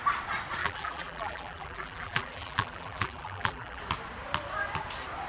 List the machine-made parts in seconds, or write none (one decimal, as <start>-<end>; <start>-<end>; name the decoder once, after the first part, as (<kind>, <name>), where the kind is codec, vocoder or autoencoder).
0.6-3.8 (vocoder, BigVGAN v2)